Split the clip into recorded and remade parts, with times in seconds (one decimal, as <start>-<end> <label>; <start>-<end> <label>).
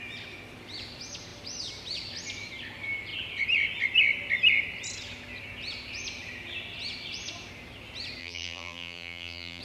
0.0-8.2 recorded; 8.2-9.6 remade